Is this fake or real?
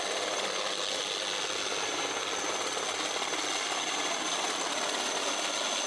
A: real